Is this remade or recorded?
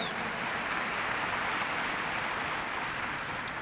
recorded